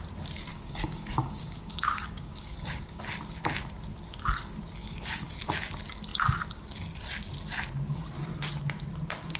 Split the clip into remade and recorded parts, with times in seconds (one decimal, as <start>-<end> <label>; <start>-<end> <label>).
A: 0.0-0.5 recorded; 0.5-3.0 remade; 3.0-4.8 recorded; 4.8-5.3 remade; 5.3-9.4 recorded